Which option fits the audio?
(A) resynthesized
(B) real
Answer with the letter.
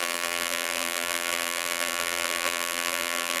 A